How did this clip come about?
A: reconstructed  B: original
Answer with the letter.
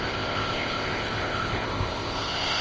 A